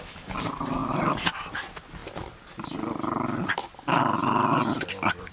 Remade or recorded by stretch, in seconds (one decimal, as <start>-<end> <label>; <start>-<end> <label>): 0.0-5.3 recorded